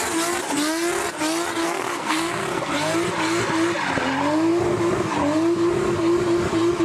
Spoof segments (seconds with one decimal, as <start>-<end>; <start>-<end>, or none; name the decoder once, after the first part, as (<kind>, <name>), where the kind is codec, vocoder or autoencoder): 1.6-2.7 (codec, SNAC)